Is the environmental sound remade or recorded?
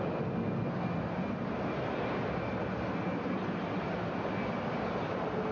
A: recorded